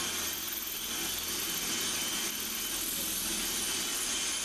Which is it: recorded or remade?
recorded